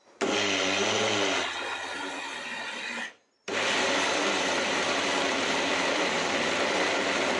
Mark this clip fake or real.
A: real